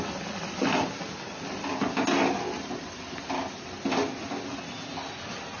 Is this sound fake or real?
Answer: real